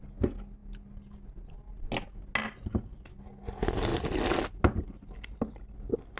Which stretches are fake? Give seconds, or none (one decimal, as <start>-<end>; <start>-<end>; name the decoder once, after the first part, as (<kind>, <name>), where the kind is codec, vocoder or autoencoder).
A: none